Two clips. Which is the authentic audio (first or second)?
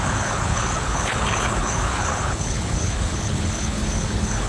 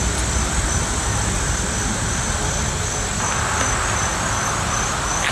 second